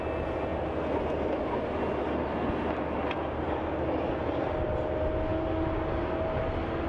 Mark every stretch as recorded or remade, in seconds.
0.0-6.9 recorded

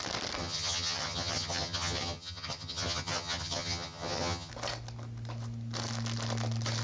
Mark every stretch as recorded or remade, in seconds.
0.0-0.4 recorded; 0.4-4.5 remade; 4.5-6.8 recorded